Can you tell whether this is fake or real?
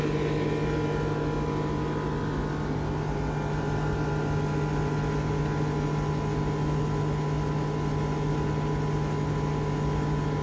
real